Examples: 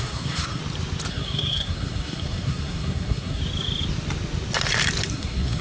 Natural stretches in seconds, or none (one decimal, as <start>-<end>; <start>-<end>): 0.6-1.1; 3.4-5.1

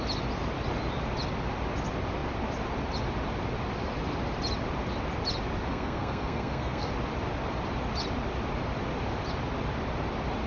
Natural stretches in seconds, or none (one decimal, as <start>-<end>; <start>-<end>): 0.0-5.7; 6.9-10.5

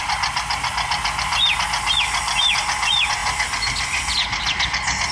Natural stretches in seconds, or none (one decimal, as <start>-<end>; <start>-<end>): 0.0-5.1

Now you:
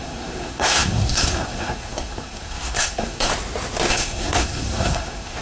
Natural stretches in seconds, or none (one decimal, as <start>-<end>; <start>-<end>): 3.3-3.9

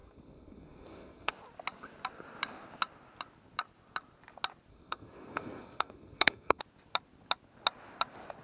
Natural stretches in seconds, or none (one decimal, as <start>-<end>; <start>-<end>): 1.3-4.7; 6.6-8.4

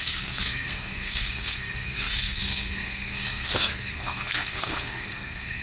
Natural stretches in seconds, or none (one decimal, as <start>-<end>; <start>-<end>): none

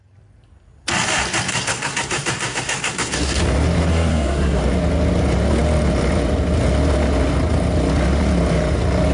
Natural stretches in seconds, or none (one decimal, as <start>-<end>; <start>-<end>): 0.0-1.5; 3.4-3.9; 4.6-9.1